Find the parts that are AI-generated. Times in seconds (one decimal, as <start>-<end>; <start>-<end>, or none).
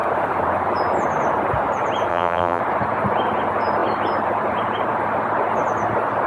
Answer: 2.1-2.6